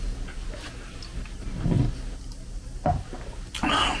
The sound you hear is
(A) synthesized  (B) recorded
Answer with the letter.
B